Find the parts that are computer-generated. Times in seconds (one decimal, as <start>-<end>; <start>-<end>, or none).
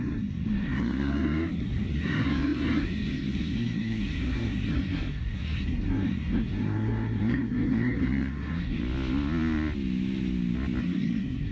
0.0-8.8; 10.8-11.5